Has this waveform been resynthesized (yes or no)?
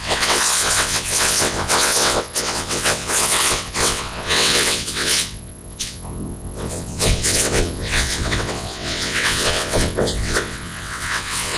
yes